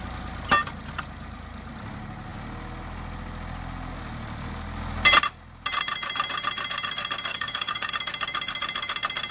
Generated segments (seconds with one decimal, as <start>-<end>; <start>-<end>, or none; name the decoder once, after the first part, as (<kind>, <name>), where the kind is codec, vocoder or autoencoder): 7.3-7.9 (codec, DAC)